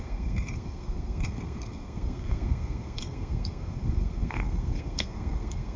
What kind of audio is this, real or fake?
fake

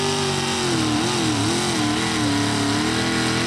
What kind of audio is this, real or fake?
real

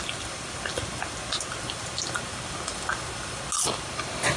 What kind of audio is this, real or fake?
real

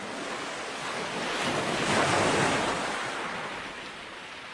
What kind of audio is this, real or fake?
real